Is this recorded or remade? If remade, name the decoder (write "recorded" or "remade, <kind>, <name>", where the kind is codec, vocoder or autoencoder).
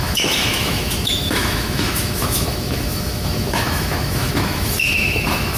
remade, autoencoder, DAC-VAE